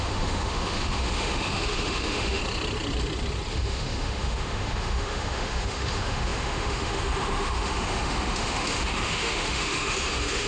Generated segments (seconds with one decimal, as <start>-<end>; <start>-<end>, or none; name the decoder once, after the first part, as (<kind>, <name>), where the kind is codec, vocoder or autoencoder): 0.0-2.4 (autoencoder, DAC-VAE); 3.5-10.5

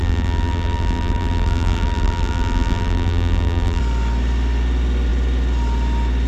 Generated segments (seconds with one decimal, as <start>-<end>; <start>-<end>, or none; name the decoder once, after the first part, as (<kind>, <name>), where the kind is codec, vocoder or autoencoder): 0.0-3.8 (vocoder, BigVGAN v2)

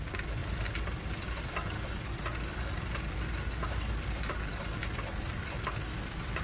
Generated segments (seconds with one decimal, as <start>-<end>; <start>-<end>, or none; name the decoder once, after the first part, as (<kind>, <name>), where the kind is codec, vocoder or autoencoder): none

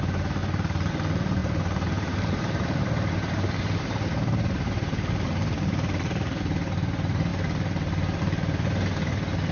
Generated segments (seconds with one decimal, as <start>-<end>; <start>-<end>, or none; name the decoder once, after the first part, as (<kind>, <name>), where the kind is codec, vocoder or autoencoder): 0.4-0.9 (vocoder, BigVGAN v2); 1.4-6.4

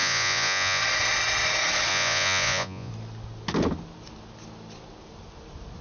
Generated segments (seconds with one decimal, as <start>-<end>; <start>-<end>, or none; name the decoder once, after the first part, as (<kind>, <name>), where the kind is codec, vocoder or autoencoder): 0.0-0.8 (vocoder, Vocos); 1.9-2.9

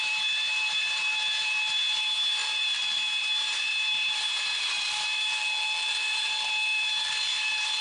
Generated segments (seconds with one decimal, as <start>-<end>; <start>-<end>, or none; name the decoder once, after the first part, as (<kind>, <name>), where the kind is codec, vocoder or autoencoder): 0.0-5.4 (vocoder, BigVGAN v2); 5.9-7.8

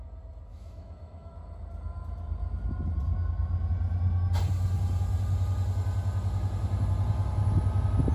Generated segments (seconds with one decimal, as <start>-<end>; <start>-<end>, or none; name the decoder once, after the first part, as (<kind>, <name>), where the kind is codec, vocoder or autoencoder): 0.5-1.3 (autoencoder, DAC-VAE)

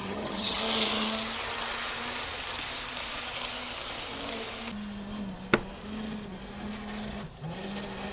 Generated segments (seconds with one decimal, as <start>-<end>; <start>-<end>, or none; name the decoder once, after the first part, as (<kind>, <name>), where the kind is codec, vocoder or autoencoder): 0.0-0.6 (vocoder, HiFi-GAN)